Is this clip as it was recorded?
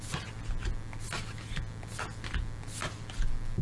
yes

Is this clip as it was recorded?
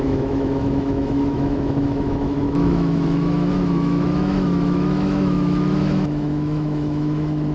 no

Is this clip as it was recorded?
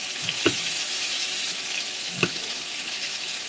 no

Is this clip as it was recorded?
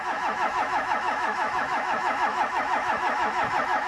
no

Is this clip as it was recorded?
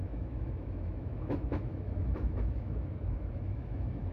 no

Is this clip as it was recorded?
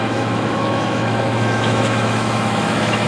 no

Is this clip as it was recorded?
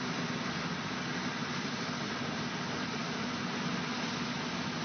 yes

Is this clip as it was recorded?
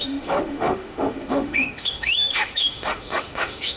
no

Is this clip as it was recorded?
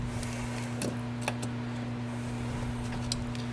yes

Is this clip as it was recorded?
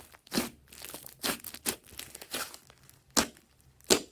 yes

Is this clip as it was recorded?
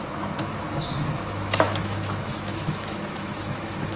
no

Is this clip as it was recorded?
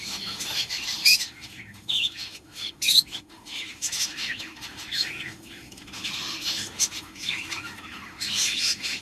no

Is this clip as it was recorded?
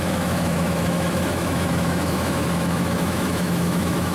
no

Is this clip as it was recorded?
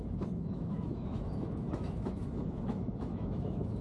no